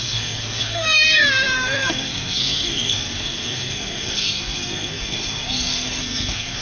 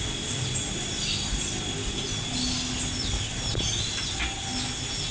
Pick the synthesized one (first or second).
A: first